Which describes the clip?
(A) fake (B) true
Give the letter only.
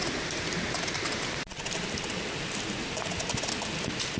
B